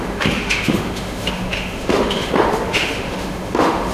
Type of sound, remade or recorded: remade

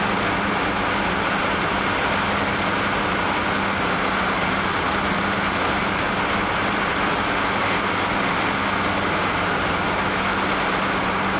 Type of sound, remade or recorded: recorded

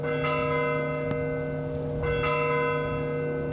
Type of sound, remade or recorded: recorded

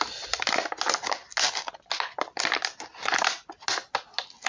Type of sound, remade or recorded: recorded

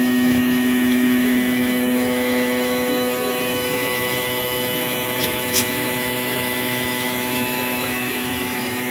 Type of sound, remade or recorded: remade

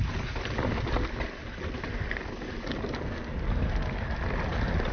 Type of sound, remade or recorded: recorded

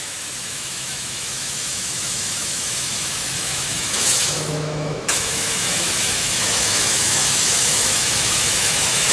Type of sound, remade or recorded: remade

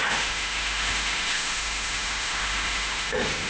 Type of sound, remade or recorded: remade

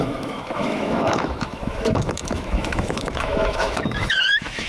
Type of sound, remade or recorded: remade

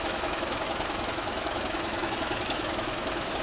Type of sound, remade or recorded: remade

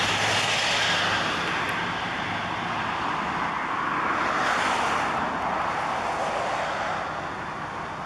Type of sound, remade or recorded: recorded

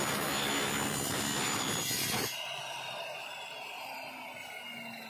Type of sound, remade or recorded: recorded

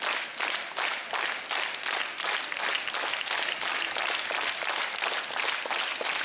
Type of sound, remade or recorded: recorded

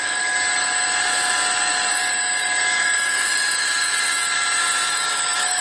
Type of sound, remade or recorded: remade